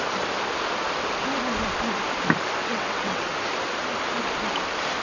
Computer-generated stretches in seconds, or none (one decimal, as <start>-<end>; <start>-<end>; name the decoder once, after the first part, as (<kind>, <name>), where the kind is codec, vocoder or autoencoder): 2.6-3.3 (vocoder, WaveNeXt)